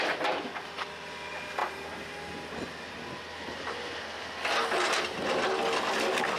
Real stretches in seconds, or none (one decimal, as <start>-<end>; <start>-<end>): 0.0-6.4

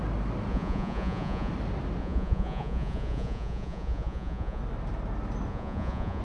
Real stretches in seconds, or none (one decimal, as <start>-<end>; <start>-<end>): 0.0-0.5; 1.5-2.0; 4.6-5.5

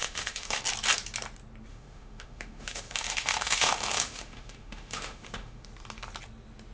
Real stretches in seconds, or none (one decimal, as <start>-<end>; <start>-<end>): 0.6-1.7; 5.7-6.7

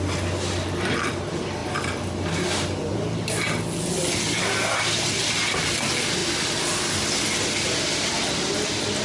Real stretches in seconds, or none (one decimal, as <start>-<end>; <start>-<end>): 0.0-9.0